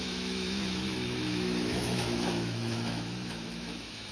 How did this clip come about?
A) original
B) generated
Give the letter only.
B